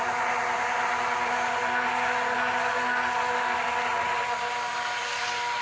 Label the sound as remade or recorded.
recorded